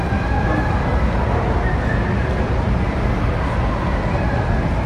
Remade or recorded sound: recorded